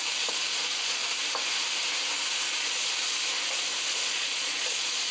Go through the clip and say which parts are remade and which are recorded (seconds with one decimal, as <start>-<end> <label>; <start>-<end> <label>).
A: 0.0-1.0 remade; 1.0-4.1 recorded; 4.1-5.1 remade